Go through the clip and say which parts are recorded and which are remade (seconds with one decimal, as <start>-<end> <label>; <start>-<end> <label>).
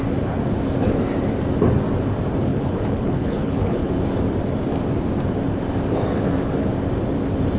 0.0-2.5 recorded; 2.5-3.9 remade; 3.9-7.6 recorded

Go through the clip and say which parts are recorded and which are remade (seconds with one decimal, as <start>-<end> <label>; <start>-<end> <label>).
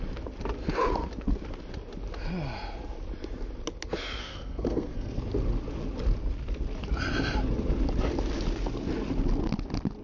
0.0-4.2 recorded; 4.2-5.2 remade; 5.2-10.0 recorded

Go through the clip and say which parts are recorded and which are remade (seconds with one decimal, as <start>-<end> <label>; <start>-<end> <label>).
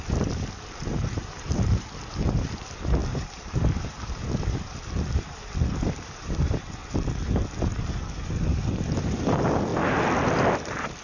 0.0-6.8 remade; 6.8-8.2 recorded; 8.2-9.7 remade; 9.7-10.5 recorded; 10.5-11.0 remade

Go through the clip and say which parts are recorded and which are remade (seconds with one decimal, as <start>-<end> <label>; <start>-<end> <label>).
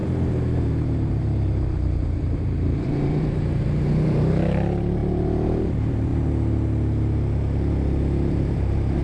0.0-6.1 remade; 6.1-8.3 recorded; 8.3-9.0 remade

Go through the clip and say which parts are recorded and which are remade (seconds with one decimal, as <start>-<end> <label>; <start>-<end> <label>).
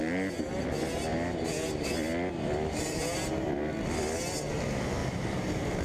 0.0-5.0 recorded; 5.0-5.8 remade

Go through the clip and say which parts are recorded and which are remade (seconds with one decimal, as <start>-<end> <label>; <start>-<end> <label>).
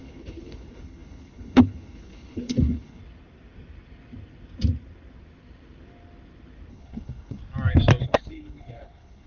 0.0-3.0 remade; 3.0-6.7 recorded; 6.7-7.4 remade; 7.4-8.0 recorded; 8.0-9.3 remade